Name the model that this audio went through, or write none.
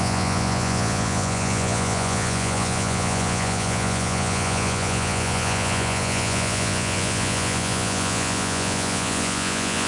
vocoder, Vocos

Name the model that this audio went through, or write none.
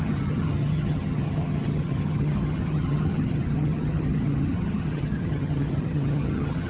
vocoder, HiFi-GAN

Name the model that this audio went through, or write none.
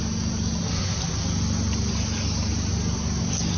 none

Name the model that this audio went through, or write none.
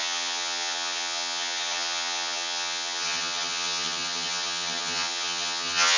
vocoder, HiFi-GAN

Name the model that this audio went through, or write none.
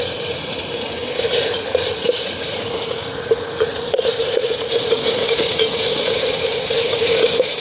vocoder, Vocos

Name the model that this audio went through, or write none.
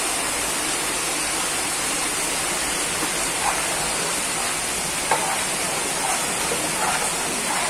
none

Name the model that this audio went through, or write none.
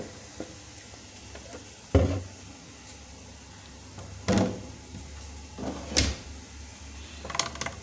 none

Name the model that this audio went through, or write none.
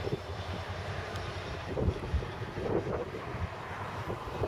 vocoder, BigVGAN v2